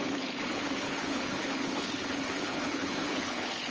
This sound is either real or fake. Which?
fake